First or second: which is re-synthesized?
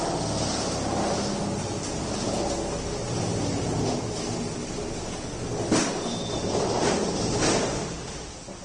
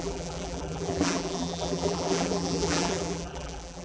second